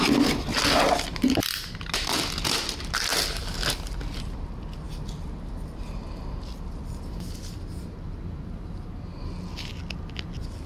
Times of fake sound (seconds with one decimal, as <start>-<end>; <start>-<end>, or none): none